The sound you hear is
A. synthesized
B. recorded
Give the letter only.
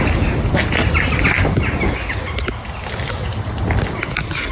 B